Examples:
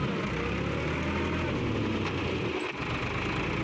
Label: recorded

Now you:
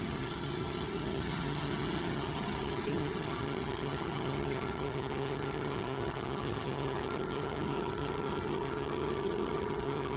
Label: remade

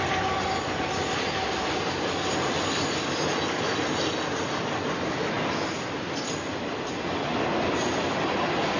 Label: recorded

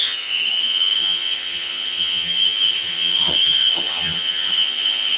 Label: remade